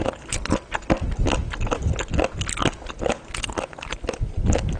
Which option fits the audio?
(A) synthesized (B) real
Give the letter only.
B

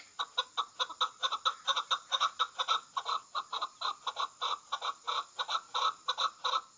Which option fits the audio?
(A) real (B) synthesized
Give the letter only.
A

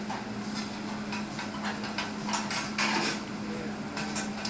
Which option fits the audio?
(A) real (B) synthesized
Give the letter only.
A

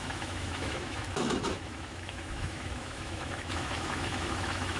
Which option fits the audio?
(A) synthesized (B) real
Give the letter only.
A